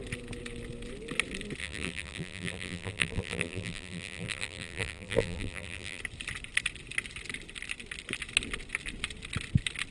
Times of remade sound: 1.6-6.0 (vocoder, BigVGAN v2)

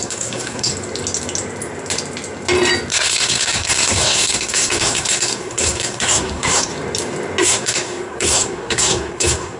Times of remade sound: 0.0-0.7 (codec, SNAC); 2.9-6.7; 7.4-9.6